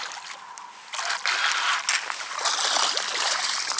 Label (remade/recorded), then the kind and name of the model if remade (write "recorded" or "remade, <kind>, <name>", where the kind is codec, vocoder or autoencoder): recorded